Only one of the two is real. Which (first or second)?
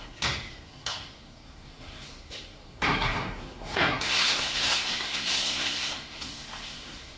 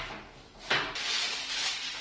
second